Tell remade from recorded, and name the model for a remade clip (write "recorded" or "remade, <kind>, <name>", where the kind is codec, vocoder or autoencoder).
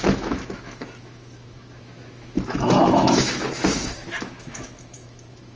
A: remade, autoencoder, DAC-VAE